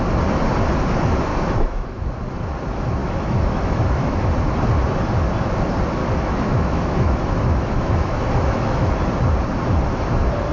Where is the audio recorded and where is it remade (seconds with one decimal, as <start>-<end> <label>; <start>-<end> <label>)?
0.0-1.3 recorded; 1.3-2.0 remade; 2.0-3.0 recorded; 3.0-4.2 remade; 4.2-6.0 recorded; 6.0-8.9 remade; 8.9-10.5 recorded

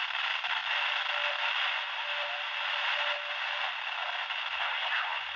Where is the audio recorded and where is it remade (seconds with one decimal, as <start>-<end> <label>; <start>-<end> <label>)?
0.0-4.6 recorded; 4.6-5.4 remade